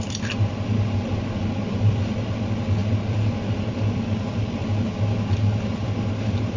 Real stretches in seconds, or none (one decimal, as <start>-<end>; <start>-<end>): 0.0-6.6